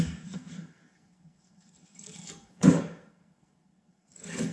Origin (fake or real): fake